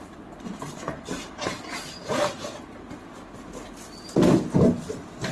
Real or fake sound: real